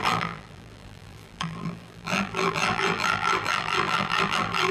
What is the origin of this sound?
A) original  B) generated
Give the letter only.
B